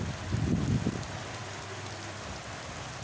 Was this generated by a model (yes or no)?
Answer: no